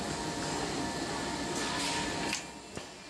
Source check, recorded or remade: recorded